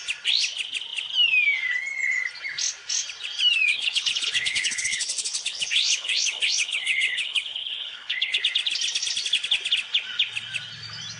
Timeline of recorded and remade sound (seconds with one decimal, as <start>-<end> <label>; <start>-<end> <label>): 0.0-3.7 recorded; 3.7-8.4 remade; 8.4-11.2 recorded